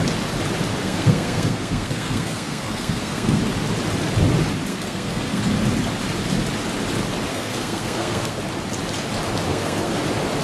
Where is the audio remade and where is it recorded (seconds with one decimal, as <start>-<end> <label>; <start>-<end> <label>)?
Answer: 0.0-0.8 recorded; 0.8-3.4 remade; 3.4-4.7 recorded; 4.7-5.4 remade; 5.4-7.3 recorded; 7.3-8.4 remade; 8.4-9.5 recorded; 9.5-10.0 remade; 10.0-10.4 recorded